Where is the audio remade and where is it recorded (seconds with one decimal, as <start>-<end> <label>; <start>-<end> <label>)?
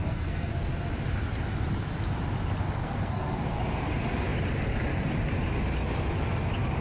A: 0.0-0.5 remade; 0.5-2.8 recorded; 2.8-3.6 remade; 3.6-6.8 recorded